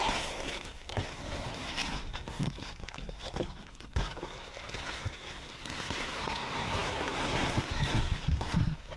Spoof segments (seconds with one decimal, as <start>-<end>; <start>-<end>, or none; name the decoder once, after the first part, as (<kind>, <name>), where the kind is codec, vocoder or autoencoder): 0.0-9.0 (codec, SNAC)